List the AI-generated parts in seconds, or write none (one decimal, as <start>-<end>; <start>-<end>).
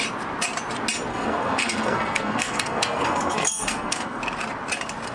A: 1.1-4.2